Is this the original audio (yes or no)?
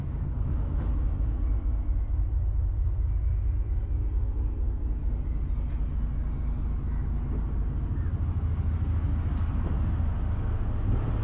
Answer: yes